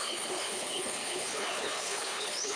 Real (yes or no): no